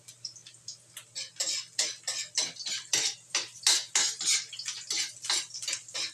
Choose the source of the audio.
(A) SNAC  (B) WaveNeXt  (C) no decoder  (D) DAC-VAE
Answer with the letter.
C